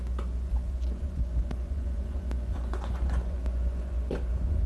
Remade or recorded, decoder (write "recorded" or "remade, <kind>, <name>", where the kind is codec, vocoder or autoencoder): remade, vocoder, Vocos